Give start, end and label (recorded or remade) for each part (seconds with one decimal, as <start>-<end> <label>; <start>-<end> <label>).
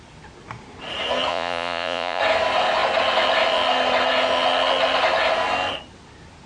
0.0-1.3 recorded; 1.3-2.2 remade; 2.2-6.5 recorded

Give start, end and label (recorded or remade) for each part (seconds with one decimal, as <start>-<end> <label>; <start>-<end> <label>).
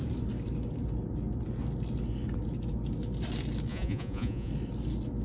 0.0-3.7 recorded; 3.7-4.5 remade; 4.5-5.2 recorded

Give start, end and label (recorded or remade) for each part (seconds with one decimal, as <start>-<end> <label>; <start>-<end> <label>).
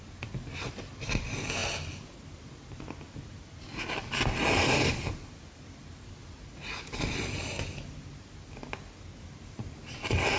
0.0-10.4 recorded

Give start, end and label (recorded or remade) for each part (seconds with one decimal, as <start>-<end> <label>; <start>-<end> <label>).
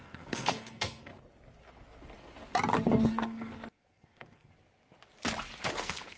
0.0-1.1 remade; 1.1-3.1 recorded; 3.1-4.5 remade; 4.5-5.7 recorded; 5.7-6.2 remade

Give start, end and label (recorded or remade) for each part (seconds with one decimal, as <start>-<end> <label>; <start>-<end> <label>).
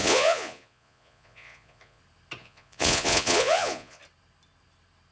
0.0-2.0 remade; 2.0-2.4 recorded; 2.4-4.0 remade; 4.0-5.1 recorded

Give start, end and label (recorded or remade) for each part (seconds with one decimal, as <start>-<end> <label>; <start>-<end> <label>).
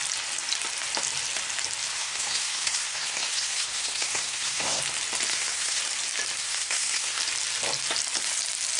0.0-1.9 recorded; 1.9-4.8 remade; 4.8-5.3 recorded; 5.3-5.8 remade; 5.8-6.4 recorded; 6.4-7.2 remade; 7.2-8.8 recorded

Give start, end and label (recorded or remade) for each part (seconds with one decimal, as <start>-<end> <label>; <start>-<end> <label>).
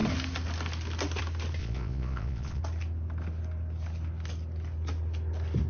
0.0-1.6 recorded; 1.6-2.6 remade; 2.6-5.7 recorded